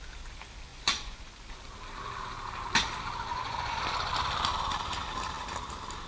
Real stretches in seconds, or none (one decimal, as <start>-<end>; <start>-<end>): 0.0-0.7; 1.6-3.3; 3.8-6.1